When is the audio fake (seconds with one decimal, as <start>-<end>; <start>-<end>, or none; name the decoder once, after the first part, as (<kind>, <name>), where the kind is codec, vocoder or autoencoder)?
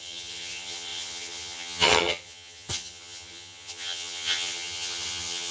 0.0-5.5 (vocoder, HiFi-GAN)